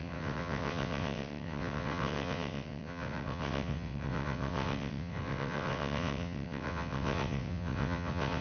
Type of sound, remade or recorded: remade